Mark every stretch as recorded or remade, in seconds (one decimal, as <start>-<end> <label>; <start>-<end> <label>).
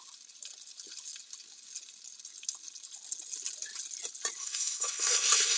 0.0-4.4 recorded; 4.4-5.6 remade